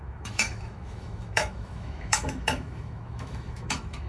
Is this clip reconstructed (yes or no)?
yes